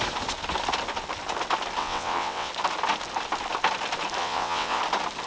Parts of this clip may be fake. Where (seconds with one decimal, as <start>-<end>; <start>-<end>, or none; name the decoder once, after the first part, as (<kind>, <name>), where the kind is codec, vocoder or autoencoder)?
1.8-2.5 (vocoder, WaveNeXt); 4.2-4.8